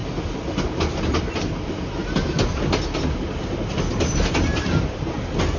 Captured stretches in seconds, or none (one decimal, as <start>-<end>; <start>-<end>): 0.0-5.6

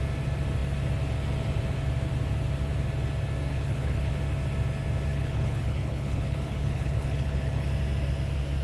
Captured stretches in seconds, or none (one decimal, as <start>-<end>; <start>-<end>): 0.0-3.5; 4.1-5.1; 7.7-8.6

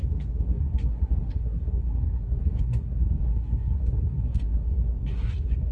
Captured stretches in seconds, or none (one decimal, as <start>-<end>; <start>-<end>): none

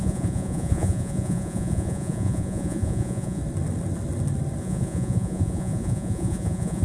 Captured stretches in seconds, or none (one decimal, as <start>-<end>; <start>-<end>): 3.4-4.6

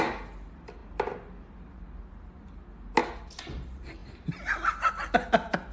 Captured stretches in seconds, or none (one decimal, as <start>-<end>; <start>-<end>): 0.0-5.7

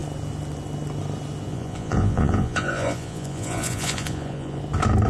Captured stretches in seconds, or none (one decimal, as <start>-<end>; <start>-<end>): 0.0-1.5; 4.6-5.1

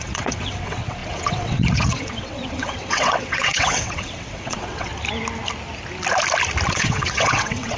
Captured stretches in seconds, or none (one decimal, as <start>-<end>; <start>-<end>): 4.9-6.7